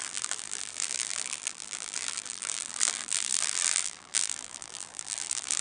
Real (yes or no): no